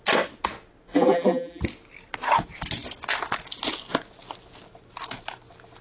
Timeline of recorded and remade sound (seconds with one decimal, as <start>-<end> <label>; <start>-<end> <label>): 0.0-0.9 recorded; 0.9-1.6 remade; 1.6-5.8 recorded